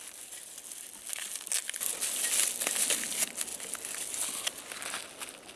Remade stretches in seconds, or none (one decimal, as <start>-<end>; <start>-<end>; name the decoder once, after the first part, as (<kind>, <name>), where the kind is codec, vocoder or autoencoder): none